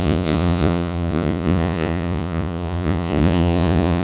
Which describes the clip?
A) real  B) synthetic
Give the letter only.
B